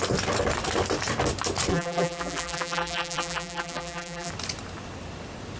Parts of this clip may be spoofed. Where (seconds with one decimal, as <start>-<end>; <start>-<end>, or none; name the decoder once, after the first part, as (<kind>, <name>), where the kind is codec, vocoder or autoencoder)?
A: 1.7-4.3 (vocoder, BigVGAN v2)